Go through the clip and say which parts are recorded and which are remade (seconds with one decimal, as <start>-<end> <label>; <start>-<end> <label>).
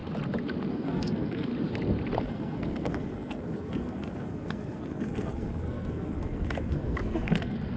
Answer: 0.0-0.7 recorded; 0.7-1.5 remade; 1.5-2.2 recorded; 2.2-7.8 remade